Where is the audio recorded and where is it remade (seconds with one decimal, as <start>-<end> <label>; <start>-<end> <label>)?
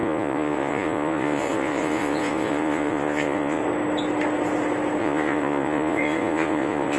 0.0-3.6 remade; 3.6-5.0 recorded; 5.0-7.0 remade